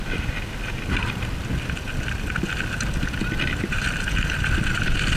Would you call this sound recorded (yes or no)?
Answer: yes